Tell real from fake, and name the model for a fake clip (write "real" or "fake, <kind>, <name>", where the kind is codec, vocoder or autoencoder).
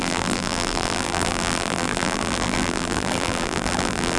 fake, vocoder, BigVGAN v2